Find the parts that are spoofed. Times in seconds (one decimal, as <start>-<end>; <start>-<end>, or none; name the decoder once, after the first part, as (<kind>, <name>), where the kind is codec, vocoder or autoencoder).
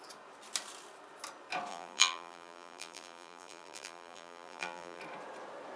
1.7-5.0 (vocoder, BigVGAN v2)